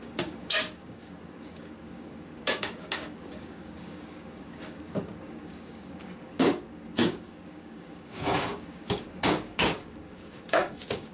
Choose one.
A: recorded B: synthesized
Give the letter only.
B